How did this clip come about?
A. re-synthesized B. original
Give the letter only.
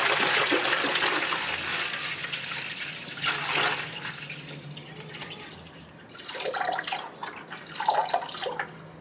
B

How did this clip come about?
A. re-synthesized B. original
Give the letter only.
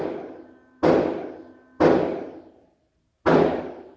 B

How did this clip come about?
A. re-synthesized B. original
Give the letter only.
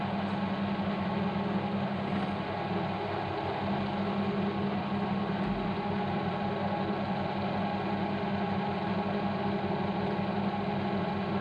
B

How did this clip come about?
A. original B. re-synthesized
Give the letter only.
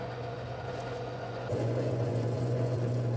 B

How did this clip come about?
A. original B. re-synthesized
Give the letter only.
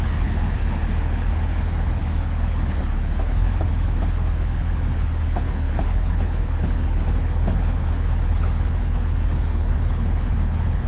B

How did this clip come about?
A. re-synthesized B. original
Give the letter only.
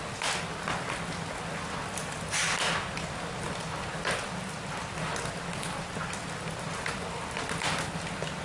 B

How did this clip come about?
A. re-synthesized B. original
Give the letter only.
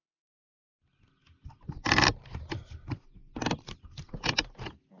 B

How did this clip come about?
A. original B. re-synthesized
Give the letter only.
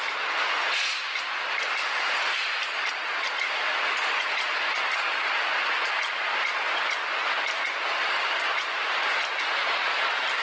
A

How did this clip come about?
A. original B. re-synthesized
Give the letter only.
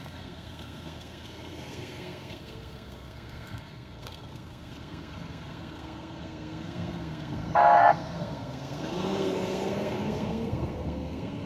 B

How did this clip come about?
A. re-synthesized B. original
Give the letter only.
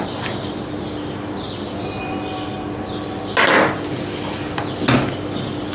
B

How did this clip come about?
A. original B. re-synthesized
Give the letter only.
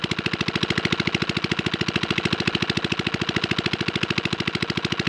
A